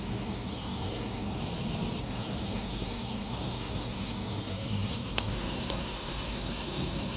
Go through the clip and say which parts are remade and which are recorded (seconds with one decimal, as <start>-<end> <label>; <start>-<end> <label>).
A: 0.0-1.4 remade; 1.4-2.0 recorded; 2.0-7.2 remade